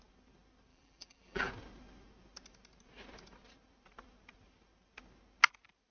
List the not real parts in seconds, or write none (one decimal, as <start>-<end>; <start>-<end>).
0.7-1.5